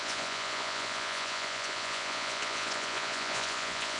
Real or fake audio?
fake